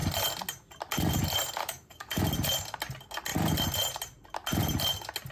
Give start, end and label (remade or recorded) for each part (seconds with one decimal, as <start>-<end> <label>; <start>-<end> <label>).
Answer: 0.0-1.6 recorded; 1.6-2.2 remade; 2.2-5.3 recorded